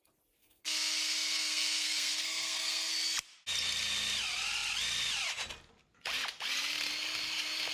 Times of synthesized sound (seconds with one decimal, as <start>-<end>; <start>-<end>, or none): 0.4-2.9